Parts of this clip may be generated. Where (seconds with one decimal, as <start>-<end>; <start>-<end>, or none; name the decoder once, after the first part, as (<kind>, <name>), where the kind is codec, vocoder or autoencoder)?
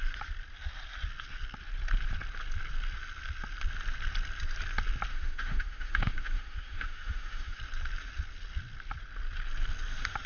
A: 5.1-7.6 (autoencoder, DAC-VAE)